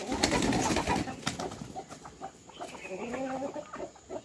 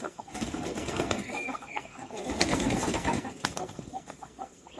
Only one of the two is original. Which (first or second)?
first